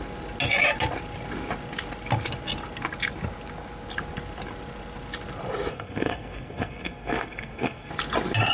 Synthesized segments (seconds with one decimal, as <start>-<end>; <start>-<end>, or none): 5.7-7.9